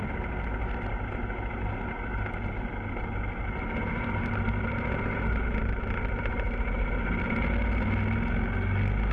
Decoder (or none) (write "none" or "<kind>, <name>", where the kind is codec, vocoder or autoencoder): none